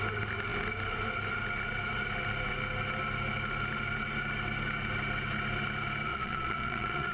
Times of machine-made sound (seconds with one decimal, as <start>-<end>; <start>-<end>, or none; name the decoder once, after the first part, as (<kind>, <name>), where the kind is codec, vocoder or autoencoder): 6.1-7.1 (vocoder, Vocos)